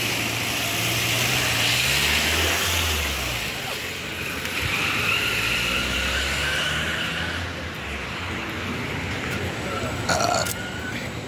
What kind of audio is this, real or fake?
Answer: real